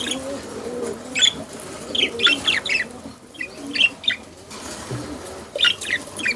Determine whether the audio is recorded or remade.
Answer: remade